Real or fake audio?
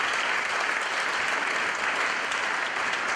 real